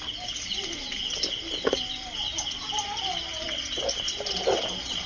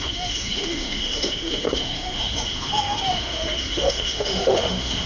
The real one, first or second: first